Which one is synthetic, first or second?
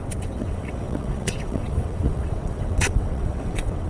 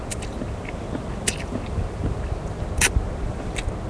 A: first